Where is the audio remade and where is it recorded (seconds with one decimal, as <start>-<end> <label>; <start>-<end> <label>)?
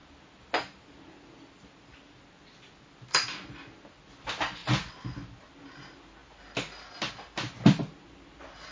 0.0-8.7 recorded